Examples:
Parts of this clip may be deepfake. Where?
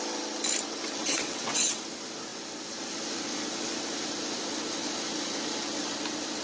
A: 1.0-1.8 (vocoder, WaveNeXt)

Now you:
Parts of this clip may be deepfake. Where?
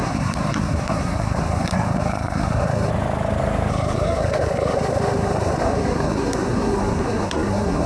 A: 0.0-2.9 (codec, SNAC); 3.7-7.9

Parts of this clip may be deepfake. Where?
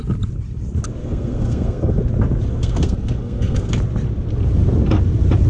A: 1.0-2.0 (codec, SNAC); 2.5-3.7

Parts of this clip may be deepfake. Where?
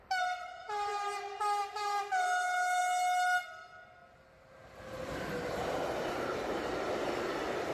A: none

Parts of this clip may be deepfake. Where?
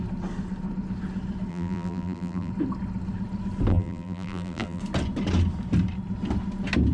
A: 1.5-2.5 (vocoder, BigVGAN v2); 3.7-4.8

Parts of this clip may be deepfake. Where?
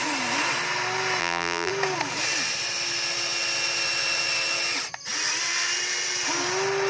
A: 1.2-1.7 (vocoder, BigVGAN v2)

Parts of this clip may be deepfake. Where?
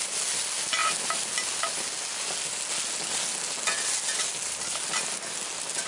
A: none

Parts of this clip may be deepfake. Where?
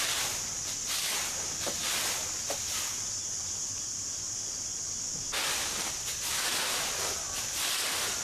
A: none